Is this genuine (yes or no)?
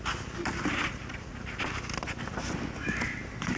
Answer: yes